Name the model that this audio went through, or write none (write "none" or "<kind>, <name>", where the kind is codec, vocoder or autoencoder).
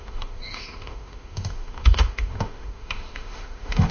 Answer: autoencoder, DAC-VAE